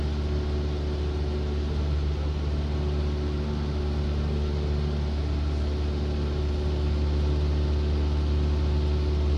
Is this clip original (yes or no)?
yes